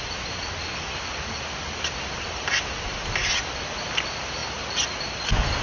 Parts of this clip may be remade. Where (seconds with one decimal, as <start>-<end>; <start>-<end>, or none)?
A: none